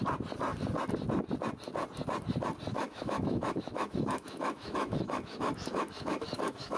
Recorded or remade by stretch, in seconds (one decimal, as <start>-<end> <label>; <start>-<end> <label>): 0.0-2.7 recorded; 2.7-6.8 remade